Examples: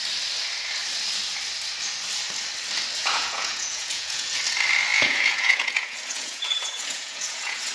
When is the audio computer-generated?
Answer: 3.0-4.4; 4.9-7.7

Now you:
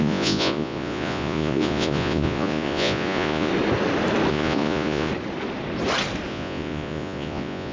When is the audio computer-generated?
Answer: 0.0-3.5; 4.3-5.1; 6.3-7.7